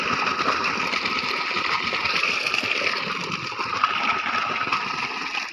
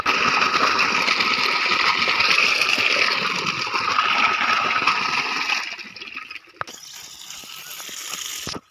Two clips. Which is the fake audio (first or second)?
first